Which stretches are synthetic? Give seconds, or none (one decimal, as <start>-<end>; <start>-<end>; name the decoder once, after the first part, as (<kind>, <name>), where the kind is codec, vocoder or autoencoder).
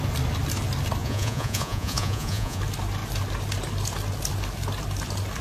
1.0-2.6 (vocoder, Vocos)